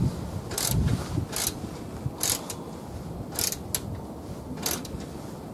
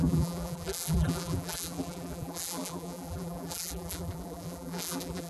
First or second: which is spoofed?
second